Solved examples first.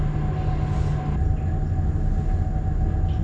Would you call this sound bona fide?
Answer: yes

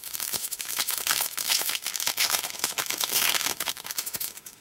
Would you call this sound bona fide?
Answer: no